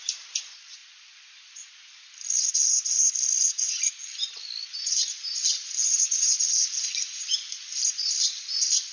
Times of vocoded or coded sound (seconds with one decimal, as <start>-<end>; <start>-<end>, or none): 5.8-6.5